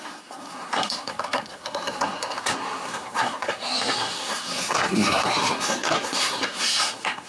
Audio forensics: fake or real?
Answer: fake